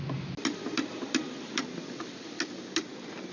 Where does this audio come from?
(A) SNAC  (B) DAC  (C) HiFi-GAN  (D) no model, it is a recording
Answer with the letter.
D